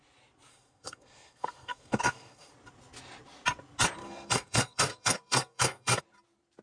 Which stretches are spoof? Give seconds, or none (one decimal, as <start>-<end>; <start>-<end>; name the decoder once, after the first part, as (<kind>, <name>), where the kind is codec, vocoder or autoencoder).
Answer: 0.5-2.5 (codec, SNAC); 4.0-6.0